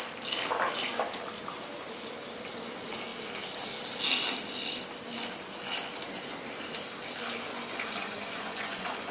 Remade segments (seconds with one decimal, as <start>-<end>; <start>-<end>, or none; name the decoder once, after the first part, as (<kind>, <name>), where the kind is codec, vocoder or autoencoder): 7.5-9.1 (vocoder, Vocos)